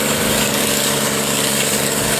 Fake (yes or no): yes